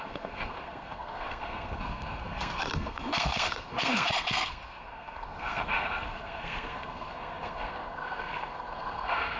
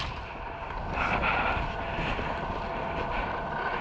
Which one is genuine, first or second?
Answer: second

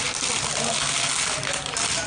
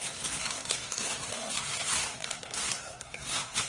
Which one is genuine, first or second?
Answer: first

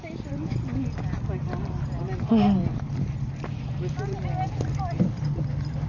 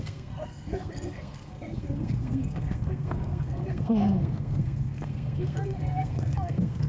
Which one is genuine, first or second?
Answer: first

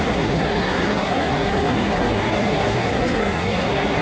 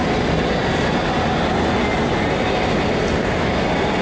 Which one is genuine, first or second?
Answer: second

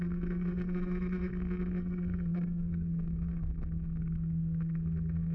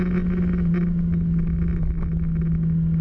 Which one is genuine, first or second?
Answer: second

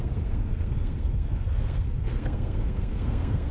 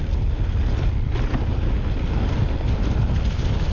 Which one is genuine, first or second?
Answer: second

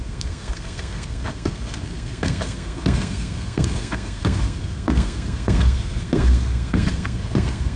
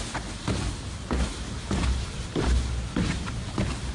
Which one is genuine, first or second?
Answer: second